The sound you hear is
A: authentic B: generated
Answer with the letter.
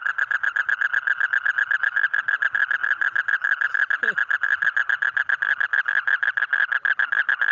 A